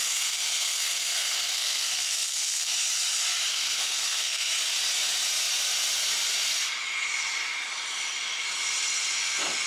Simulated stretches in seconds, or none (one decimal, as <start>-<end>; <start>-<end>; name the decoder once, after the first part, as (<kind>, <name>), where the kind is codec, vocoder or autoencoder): 0.0-2.7 (codec, SNAC); 3.5-4.5